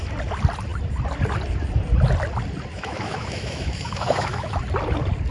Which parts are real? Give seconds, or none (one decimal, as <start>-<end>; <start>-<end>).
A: 0.0-2.7; 4.6-5.3